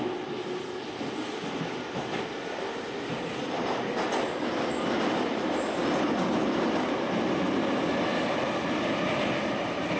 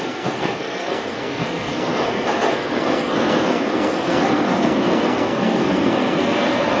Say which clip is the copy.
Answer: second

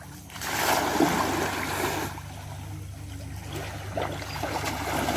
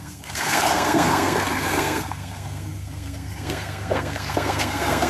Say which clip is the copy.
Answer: second